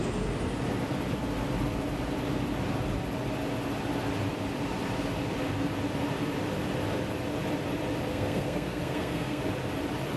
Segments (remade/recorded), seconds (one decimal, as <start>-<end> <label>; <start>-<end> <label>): 0.0-8.1 recorded; 8.1-9.4 remade; 9.4-10.2 recorded